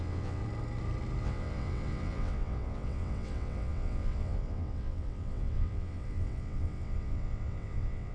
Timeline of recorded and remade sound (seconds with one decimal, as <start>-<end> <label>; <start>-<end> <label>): 0.0-0.4 remade; 0.4-1.2 recorded; 1.2-8.1 remade